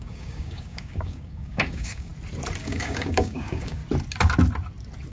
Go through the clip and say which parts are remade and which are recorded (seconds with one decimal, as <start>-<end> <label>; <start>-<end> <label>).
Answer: 0.0-2.1 remade; 2.1-2.6 recorded; 2.6-3.8 remade; 3.8-5.1 recorded